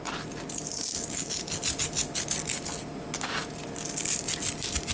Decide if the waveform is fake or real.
real